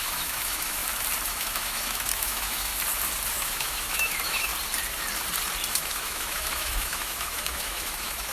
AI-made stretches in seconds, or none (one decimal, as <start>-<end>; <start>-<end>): 0.0-0.8; 1.3-2.7; 3.3-4.5; 5.7-8.3